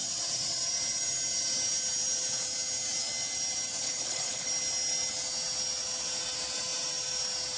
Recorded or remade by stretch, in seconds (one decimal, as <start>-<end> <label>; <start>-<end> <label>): 0.0-3.8 recorded; 3.8-4.5 remade; 4.5-7.6 recorded